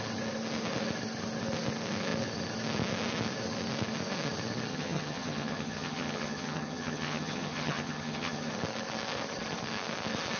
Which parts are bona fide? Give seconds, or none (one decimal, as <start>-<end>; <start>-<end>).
0.0-4.7; 8.5-10.4